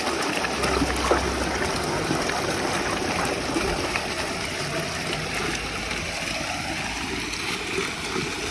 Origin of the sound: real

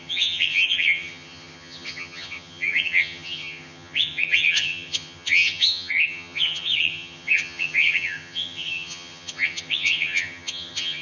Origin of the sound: fake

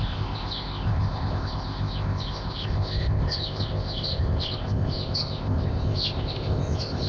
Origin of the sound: fake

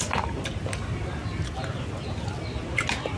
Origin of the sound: real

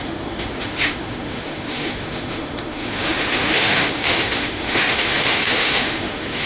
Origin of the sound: fake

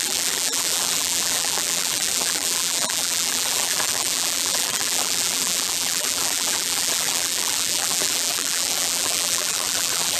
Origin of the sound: fake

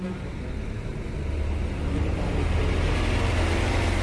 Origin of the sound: real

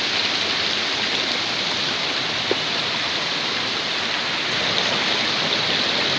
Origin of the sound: real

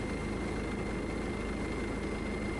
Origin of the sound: real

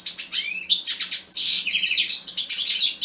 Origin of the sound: real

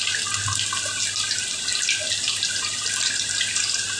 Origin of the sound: real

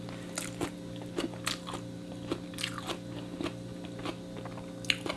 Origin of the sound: real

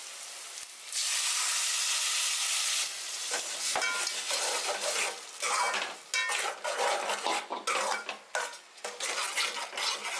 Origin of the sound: real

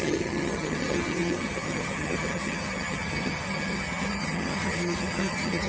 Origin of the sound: fake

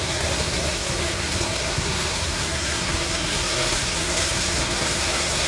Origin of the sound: fake